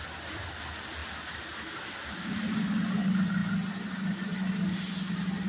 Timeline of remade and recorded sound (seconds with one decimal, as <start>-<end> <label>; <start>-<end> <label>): 0.0-5.5 recorded